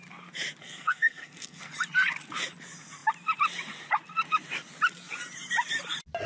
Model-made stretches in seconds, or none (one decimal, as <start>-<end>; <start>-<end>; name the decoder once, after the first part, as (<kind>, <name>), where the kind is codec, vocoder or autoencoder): 0.6-1.7 (codec, SNAC)